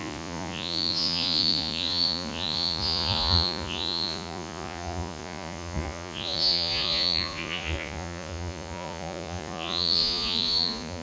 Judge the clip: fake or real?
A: fake